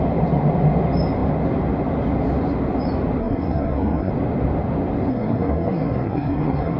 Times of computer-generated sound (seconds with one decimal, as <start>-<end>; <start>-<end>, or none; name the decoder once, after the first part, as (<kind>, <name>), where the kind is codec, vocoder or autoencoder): 3.2-4.1 (codec, SNAC); 5.1-6.8